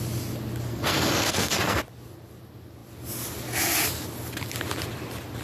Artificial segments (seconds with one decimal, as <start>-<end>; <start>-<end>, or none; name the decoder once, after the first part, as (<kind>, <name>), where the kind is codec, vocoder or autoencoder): 0.7-1.8 (codec, SNAC)